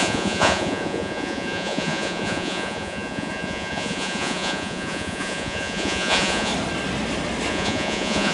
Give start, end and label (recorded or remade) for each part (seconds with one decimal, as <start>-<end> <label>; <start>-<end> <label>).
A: 0.0-6.5 remade; 6.5-7.5 recorded; 7.5-8.3 remade